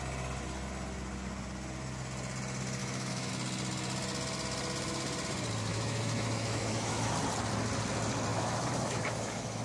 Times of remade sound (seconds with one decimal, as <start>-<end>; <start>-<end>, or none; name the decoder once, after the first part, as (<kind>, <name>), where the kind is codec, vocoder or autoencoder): 2.8-3.3 (autoencoder, DAC-VAE); 5.7-7.1; 8.3-9.6